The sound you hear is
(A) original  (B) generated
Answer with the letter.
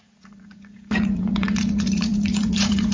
B